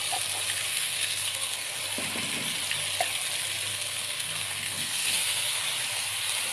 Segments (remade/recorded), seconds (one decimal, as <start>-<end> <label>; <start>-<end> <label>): 0.0-0.7 recorded; 0.7-1.8 remade; 1.8-3.7 recorded; 3.7-5.6 remade; 5.6-6.5 recorded